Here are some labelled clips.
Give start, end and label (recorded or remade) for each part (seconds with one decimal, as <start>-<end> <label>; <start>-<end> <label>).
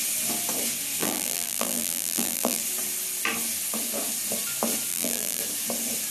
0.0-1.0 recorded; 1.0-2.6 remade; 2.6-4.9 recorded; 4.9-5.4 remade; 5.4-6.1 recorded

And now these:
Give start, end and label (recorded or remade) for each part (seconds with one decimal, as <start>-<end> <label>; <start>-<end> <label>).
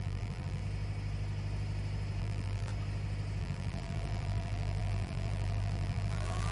0.0-0.6 remade; 0.6-2.2 recorded; 2.2-2.7 remade; 2.7-3.4 recorded; 3.4-6.5 remade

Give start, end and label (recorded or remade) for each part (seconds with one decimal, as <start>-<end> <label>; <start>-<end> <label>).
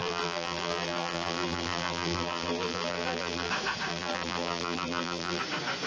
0.0-3.5 remade; 3.5-3.9 recorded; 3.9-5.4 remade; 5.4-5.9 recorded